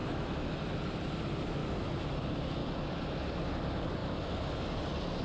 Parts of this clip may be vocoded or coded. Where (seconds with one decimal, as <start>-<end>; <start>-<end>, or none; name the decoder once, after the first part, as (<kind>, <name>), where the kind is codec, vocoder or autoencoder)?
0.0-0.6 (autoencoder, DAC-VAE); 1.6-2.1